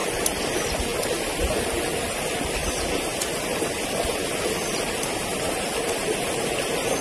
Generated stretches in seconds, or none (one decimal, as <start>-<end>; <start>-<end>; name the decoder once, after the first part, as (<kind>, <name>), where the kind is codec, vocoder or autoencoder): none